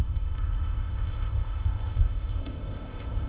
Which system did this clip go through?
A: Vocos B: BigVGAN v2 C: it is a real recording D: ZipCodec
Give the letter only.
D